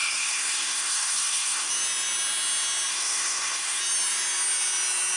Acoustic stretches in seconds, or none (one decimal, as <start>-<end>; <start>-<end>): 1.7-2.9; 3.8-5.2